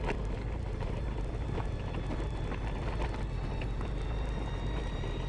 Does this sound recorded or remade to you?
recorded